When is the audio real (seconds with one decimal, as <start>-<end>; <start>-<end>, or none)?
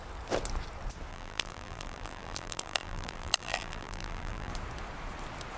0.0-1.1; 4.5-5.6